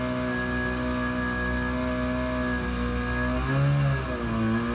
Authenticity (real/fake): real